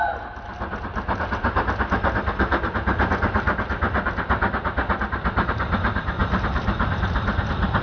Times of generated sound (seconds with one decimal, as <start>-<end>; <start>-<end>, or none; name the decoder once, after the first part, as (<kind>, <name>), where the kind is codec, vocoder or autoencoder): none